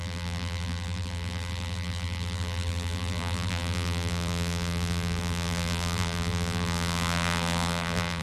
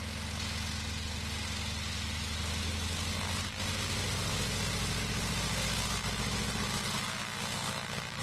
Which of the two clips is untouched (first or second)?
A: second